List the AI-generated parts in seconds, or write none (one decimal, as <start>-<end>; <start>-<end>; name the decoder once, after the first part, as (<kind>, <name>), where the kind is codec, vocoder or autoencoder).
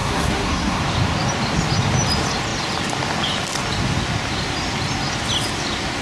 0.0-0.8 (codec, SNAC)